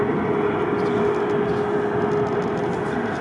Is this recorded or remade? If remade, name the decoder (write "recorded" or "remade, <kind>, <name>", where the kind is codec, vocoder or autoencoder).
recorded